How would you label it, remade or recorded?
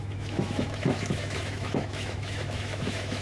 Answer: remade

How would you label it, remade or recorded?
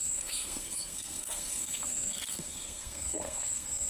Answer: remade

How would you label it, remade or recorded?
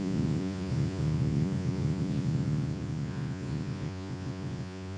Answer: remade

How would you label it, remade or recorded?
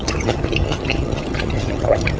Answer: remade